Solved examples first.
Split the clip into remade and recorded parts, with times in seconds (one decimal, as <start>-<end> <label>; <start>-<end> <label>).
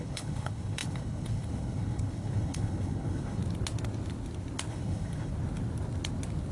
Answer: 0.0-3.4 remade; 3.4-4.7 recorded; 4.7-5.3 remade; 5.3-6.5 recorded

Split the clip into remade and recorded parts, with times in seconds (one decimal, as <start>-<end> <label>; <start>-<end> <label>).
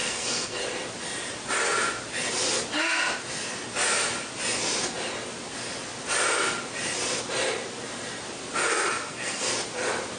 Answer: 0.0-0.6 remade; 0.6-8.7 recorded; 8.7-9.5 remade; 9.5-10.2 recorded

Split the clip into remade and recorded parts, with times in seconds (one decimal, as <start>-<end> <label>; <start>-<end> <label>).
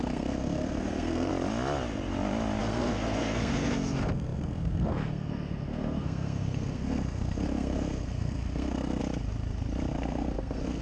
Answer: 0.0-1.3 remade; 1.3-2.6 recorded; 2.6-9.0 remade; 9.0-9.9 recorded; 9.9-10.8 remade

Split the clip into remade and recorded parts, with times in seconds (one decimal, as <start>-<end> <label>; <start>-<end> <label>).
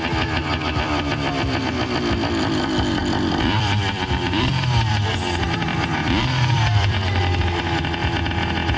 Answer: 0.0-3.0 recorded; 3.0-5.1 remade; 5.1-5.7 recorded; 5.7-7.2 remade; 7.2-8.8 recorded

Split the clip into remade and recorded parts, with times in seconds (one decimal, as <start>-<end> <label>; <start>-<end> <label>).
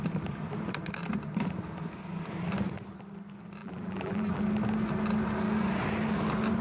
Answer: 0.0-3.6 recorded; 3.6-4.4 remade; 4.4-6.6 recorded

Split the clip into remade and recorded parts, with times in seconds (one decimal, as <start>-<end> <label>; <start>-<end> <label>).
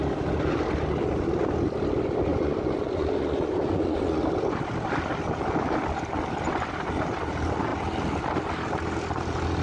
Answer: 0.0-2.3 recorded; 2.3-4.2 remade; 4.2-9.6 recorded